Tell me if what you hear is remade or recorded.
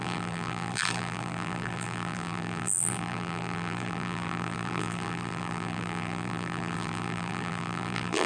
remade